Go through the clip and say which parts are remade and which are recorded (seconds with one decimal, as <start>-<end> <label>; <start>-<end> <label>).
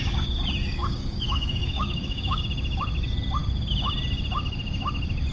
0.0-0.6 recorded; 0.6-2.4 remade; 2.4-5.3 recorded